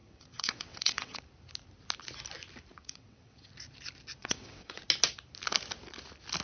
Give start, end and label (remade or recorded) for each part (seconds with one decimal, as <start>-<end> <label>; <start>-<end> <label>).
0.0-1.2 remade; 1.2-2.8 recorded; 2.8-3.5 remade; 3.5-4.2 recorded; 4.2-4.8 remade; 4.8-6.4 recorded